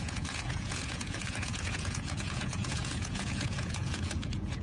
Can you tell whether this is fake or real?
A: fake